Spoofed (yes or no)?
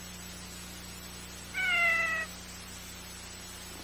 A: no